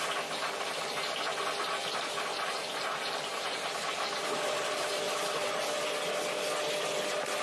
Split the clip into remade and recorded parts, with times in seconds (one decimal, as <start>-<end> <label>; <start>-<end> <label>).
0.0-1.8 recorded; 1.8-6.2 remade; 6.2-7.4 recorded